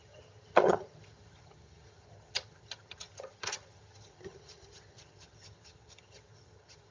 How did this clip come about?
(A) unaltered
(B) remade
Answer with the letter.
B